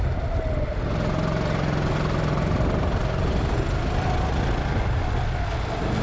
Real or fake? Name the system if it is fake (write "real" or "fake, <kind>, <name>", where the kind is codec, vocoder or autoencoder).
real